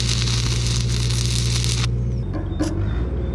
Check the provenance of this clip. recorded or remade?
recorded